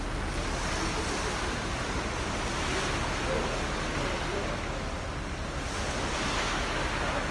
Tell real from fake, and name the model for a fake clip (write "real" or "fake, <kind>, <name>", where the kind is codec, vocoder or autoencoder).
real